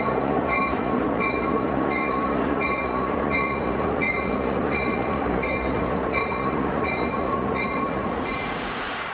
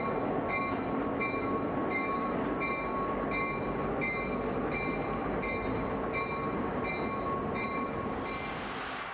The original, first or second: second